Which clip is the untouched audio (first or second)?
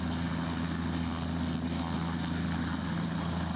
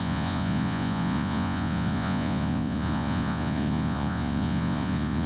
first